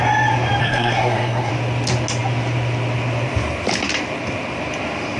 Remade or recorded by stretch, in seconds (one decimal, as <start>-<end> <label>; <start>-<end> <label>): 0.0-0.6 recorded; 0.6-1.5 remade; 1.5-5.2 recorded